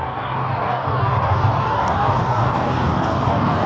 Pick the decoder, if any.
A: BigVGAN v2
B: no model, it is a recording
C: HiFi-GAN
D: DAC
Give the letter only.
D